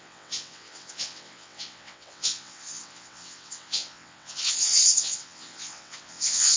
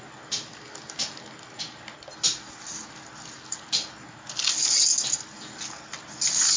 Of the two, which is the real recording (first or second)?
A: second